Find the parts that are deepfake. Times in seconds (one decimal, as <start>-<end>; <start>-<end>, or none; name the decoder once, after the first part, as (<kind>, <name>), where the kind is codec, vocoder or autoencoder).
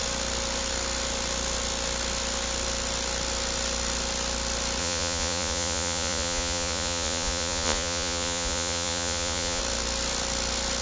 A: 4.8-9.6 (vocoder, Vocos)